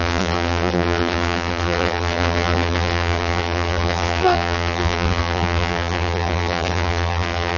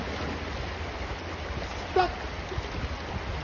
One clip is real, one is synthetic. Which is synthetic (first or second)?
first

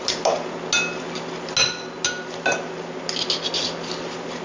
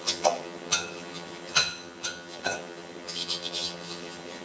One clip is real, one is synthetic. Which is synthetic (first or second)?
second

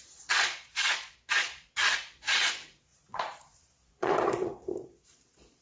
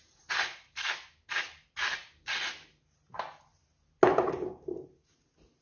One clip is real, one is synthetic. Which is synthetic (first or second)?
first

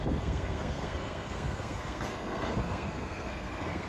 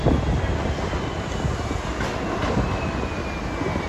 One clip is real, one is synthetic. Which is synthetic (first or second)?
first